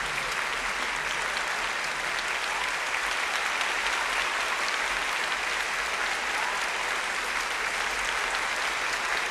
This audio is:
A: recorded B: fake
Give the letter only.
A